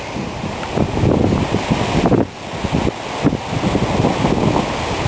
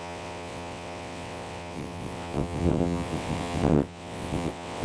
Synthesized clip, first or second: second